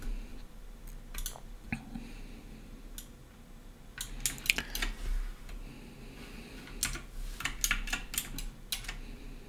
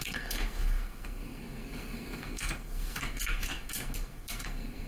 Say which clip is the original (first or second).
first